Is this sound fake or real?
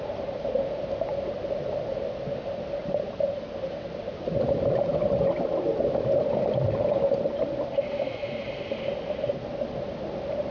real